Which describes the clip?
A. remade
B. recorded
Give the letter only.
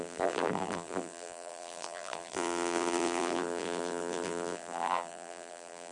A